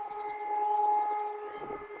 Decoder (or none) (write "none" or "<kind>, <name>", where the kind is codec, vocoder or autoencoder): none